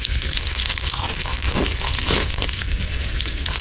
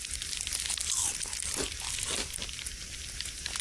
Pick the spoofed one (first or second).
first